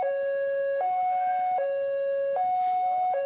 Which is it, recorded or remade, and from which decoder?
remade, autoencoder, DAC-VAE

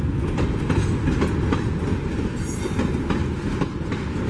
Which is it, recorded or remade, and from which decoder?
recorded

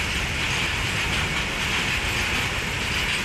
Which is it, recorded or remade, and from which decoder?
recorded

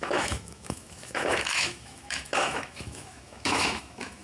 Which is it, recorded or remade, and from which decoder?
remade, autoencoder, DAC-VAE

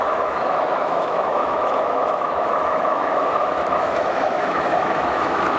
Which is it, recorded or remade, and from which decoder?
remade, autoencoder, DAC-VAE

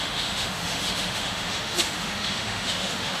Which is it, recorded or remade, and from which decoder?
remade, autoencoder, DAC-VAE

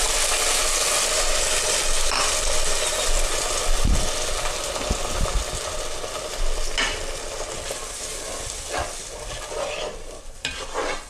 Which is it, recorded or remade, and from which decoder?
recorded